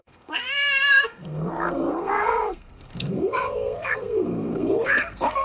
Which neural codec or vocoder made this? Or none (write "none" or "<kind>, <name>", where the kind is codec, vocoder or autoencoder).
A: codec, SNAC